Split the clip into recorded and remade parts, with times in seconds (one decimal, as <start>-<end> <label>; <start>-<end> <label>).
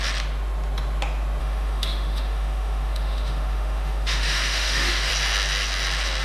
0.0-1.4 recorded; 1.4-5.1 remade; 5.1-6.2 recorded